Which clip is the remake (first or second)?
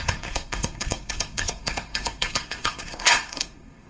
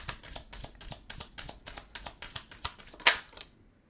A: first